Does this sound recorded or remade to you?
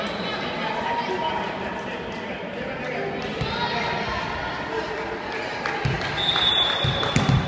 recorded